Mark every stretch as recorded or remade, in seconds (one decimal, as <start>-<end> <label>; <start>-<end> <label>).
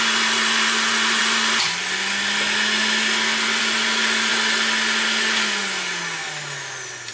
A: 0.0-7.1 recorded